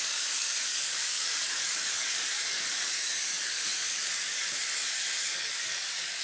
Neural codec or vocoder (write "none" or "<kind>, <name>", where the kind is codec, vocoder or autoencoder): codec, DAC